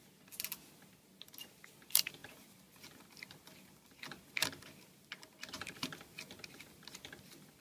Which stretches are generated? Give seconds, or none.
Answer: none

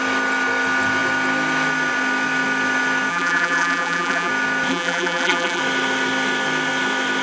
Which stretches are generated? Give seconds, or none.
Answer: 3.1-4.3 (vocoder, BigVGAN v2); 4.7-5.6

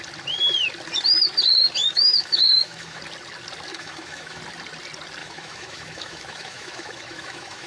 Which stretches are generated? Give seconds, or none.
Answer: 1.8-3.0 (autoencoder, DAC-VAE); 3.7-4.4; 5.2-7.7

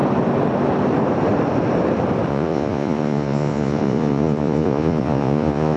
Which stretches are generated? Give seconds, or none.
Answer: 2.3-5.8 (vocoder, Vocos)